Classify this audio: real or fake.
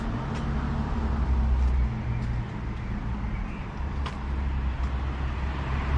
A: real